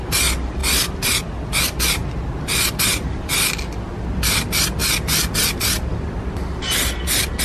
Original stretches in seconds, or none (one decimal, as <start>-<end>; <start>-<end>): 0.0-7.4